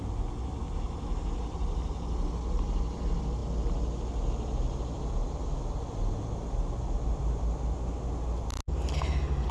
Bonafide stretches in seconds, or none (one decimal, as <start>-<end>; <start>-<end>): 0.0-9.5